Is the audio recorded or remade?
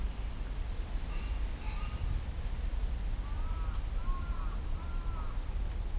recorded